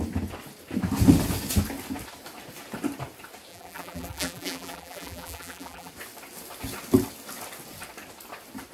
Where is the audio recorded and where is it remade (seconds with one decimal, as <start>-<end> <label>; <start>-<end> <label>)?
0.0-3.5 recorded; 3.5-5.9 remade; 5.9-8.7 recorded